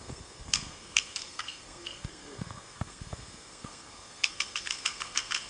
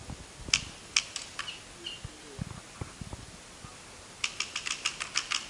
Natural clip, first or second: second